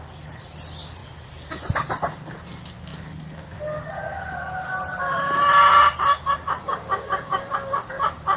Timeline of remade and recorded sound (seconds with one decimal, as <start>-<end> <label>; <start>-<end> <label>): 0.0-6.6 recorded; 6.6-7.5 remade; 7.5-8.4 recorded